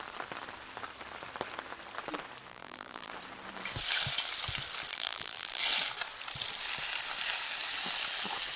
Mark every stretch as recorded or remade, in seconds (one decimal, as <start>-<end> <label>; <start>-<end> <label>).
0.0-2.5 recorded; 2.5-3.1 remade; 3.1-4.9 recorded; 4.9-5.6 remade; 5.6-8.6 recorded